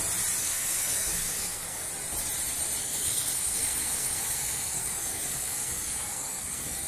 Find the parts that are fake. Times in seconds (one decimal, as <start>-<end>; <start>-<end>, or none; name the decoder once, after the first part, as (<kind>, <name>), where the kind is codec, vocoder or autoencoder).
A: 0.4-1.9 (codec, SNAC); 2.8-6.9